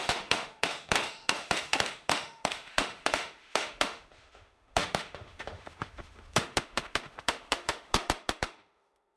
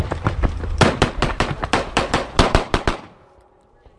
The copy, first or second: first